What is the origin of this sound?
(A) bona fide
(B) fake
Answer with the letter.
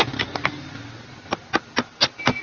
A